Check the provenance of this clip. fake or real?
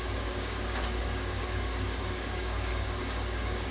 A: fake